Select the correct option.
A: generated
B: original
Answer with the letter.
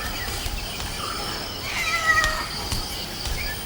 B